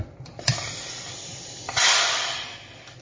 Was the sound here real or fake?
fake